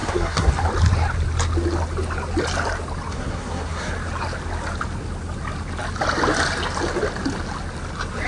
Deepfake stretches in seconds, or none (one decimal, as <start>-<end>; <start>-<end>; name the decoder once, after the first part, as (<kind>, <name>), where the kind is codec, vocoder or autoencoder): 0.0-0.5 (codec, SNAC); 3.1-3.9